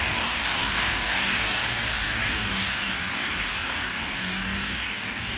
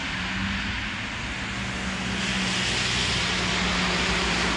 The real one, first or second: second